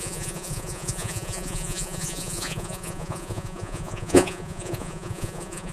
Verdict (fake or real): fake